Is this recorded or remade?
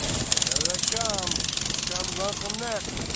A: recorded